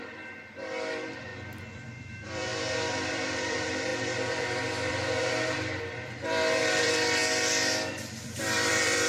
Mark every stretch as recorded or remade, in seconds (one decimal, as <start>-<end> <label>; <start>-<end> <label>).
0.0-1.3 remade; 1.3-1.8 recorded; 1.8-2.5 remade; 2.5-3.1 recorded; 3.1-7.2 remade; 7.2-7.9 recorded; 7.9-9.1 remade

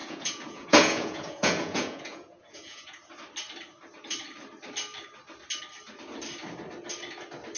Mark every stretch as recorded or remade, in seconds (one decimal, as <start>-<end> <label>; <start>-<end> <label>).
0.0-3.0 remade; 3.0-7.6 recorded

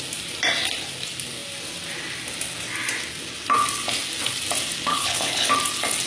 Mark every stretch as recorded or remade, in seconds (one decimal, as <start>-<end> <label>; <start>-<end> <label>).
0.0-4.9 recorded; 4.9-5.5 remade; 5.5-6.1 recorded